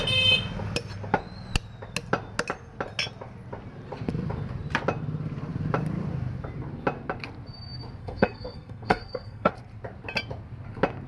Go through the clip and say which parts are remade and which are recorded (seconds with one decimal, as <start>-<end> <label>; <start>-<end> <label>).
0.0-8.0 recorded; 8.0-9.5 remade; 9.5-11.1 recorded

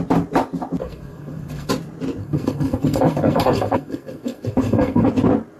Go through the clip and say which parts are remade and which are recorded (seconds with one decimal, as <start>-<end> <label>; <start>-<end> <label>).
0.0-0.8 recorded; 0.8-1.7 remade; 1.7-2.2 recorded; 2.2-5.1 remade; 5.1-5.6 recorded

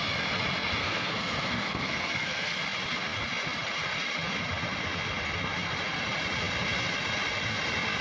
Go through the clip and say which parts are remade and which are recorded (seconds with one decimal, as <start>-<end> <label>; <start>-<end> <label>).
0.0-0.8 recorded; 0.8-2.6 remade; 2.6-8.0 recorded

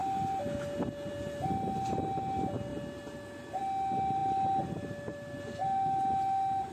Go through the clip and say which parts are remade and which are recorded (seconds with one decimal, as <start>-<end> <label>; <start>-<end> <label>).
0.0-6.7 recorded

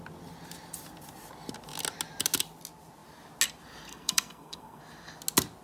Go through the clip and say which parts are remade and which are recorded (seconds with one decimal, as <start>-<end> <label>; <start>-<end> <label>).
0.0-3.9 recorded; 3.9-4.8 remade; 4.8-5.6 recorded

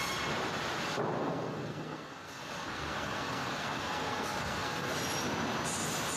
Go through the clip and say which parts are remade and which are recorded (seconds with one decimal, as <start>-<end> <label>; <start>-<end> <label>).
0.0-1.2 recorded; 1.2-4.9 remade; 4.9-6.2 recorded

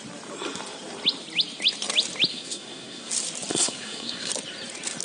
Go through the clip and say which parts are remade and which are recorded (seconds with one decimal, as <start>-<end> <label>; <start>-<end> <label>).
0.0-2.3 recorded; 2.3-3.1 remade; 3.1-3.5 recorded; 3.5-4.3 remade; 4.3-5.0 recorded

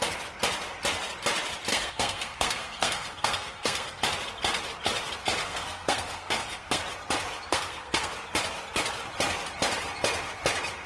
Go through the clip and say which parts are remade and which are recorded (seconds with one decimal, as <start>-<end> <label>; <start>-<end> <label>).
0.0-1.7 recorded; 1.7-4.0 remade; 4.0-5.4 recorded; 5.4-6.8 remade; 6.8-7.5 recorded; 7.5-8.1 remade; 8.1-10.9 recorded